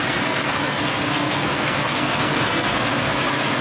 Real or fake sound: fake